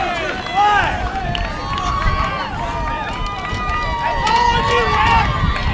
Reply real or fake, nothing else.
real